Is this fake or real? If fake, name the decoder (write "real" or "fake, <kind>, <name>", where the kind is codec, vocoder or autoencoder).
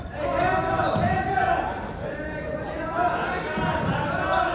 real